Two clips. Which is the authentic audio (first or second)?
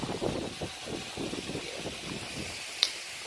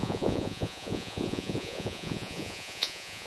first